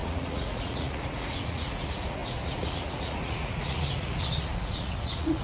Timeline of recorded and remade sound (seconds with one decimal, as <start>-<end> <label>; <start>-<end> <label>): 0.0-5.4 remade